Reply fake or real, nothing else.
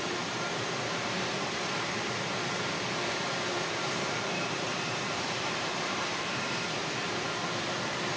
fake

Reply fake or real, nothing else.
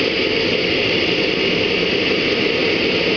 real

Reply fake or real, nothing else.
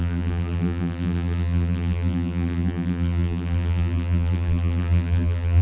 fake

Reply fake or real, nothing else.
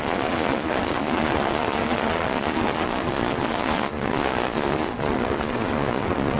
fake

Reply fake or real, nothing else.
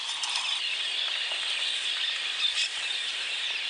real